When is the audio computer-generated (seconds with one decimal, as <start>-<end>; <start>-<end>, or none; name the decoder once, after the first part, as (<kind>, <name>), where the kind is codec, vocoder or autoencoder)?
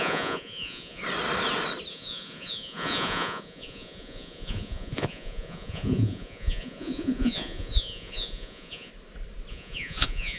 0.0-1.0 (vocoder, Vocos); 1.9-8.9; 9.5-10.4